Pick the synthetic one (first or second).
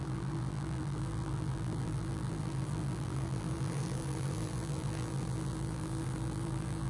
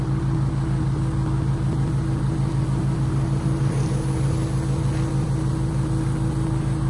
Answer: first